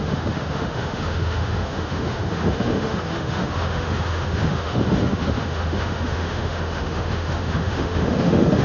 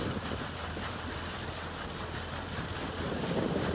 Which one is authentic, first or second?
second